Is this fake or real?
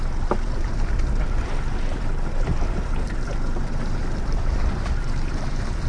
fake